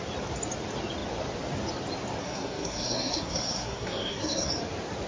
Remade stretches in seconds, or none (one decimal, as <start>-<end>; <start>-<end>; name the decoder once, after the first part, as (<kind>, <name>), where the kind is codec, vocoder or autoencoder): 2.2-4.5 (codec, SNAC)